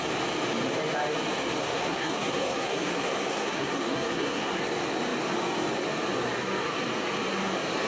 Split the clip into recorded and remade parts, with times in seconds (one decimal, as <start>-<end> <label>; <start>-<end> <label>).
0.0-1.6 recorded; 1.6-4.6 remade; 4.6-7.9 recorded